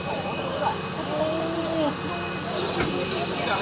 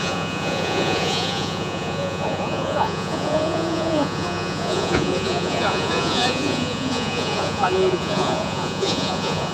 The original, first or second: first